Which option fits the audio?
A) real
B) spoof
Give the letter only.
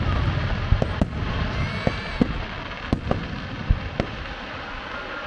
A